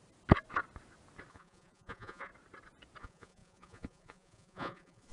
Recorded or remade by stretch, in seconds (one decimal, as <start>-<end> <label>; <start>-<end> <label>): 0.0-1.3 recorded; 1.3-2.3 remade; 2.3-3.0 recorded; 3.0-5.1 remade